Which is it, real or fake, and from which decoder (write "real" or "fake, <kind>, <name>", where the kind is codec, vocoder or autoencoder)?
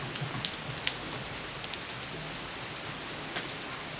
real